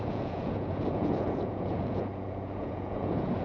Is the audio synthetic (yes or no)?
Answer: yes